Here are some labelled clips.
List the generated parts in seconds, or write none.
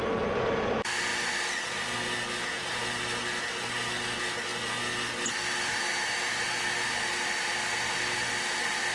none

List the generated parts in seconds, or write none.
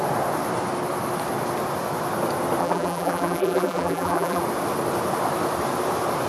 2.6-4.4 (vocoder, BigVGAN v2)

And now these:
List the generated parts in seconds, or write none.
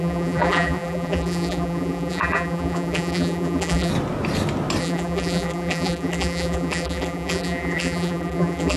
0.0-3.9 (vocoder, BigVGAN v2); 4.8-8.8